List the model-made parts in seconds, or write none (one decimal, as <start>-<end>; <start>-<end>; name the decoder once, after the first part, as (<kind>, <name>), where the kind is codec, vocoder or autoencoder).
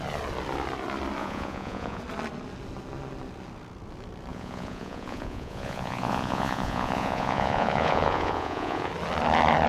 1.2-2.0 (vocoder, Vocos); 4.3-8.9